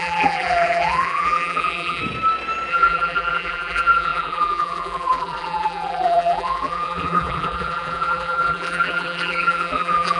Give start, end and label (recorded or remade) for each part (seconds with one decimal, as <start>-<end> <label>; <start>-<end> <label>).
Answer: 0.0-2.0 remade; 2.0-2.7 recorded; 2.7-10.2 remade